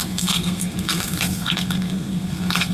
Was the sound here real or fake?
fake